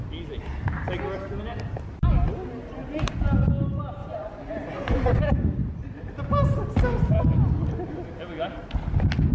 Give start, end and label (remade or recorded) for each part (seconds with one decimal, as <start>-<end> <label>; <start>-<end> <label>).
0.0-4.0 recorded; 4.0-5.2 remade; 5.2-9.3 recorded